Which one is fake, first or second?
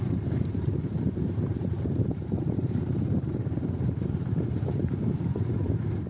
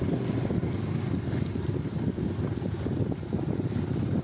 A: first